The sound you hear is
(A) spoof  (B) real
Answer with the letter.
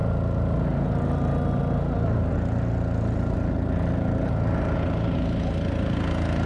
B